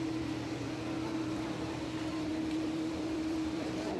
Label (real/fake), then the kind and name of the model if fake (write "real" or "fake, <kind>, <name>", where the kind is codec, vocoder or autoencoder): fake, vocoder, BigVGAN v2